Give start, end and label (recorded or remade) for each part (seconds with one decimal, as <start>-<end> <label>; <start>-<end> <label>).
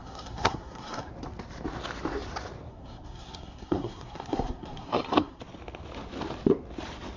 0.0-1.1 remade; 1.1-2.7 recorded; 2.7-5.4 remade; 5.4-7.2 recorded